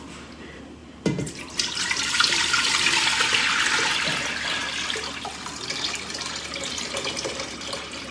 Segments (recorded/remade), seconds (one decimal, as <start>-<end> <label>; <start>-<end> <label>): 0.0-0.8 remade; 0.8-1.3 recorded; 1.3-4.6 remade; 4.6-5.4 recorded; 5.4-8.1 remade